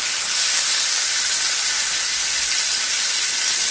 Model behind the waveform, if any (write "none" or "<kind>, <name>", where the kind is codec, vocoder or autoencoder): none